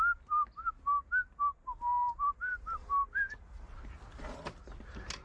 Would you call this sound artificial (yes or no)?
no